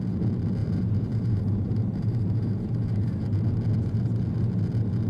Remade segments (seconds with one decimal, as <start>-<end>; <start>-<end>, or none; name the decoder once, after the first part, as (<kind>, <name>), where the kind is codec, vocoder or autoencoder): 0.6-3.2 (vocoder, BigVGAN v2)